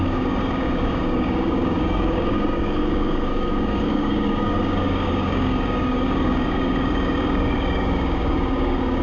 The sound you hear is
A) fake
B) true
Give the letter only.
A